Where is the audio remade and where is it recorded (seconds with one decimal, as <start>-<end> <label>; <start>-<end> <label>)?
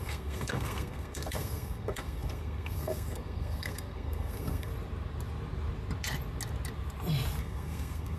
0.0-4.7 remade; 4.7-7.4 recorded; 7.4-8.2 remade